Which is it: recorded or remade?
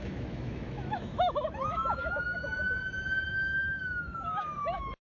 remade